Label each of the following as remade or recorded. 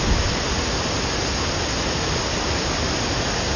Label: recorded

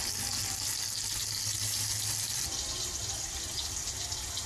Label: recorded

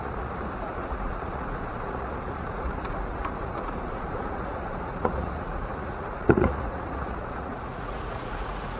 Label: remade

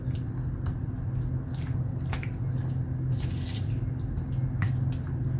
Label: recorded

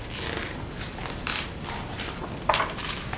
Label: recorded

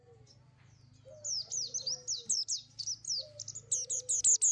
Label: recorded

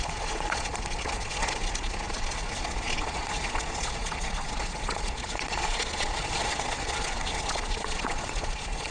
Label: remade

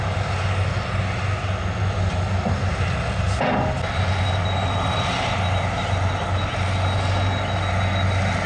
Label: recorded